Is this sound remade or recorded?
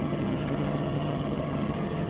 remade